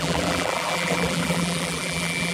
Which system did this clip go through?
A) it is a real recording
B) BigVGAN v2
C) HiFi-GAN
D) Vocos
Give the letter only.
B